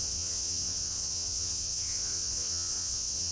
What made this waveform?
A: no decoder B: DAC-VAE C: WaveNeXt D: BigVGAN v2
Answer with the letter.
C